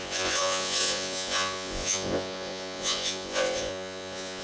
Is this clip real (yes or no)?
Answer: no